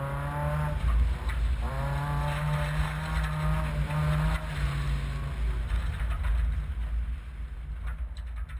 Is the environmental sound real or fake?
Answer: real